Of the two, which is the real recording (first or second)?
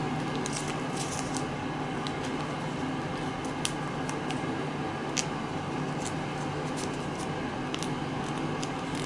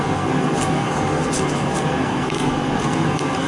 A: first